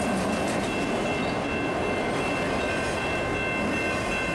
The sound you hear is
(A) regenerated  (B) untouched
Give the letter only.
B